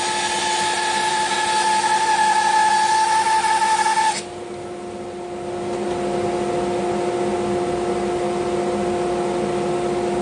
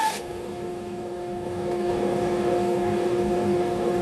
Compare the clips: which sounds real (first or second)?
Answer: first